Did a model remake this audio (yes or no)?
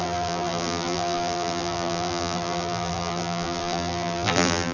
yes